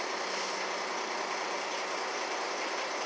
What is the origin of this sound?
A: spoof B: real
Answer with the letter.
B